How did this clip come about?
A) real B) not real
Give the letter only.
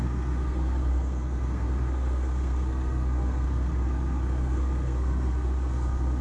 B